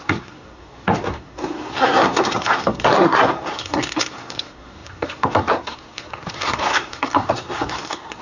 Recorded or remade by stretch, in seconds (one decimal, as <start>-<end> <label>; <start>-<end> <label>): 0.0-8.2 remade